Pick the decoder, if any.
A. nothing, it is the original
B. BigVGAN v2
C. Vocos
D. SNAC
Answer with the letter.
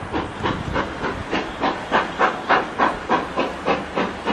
A